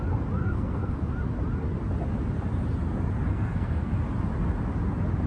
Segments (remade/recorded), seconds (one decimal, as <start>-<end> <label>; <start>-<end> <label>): 0.0-0.4 recorded; 0.4-1.1 remade; 1.1-3.3 recorded; 3.3-3.9 remade; 3.9-5.3 recorded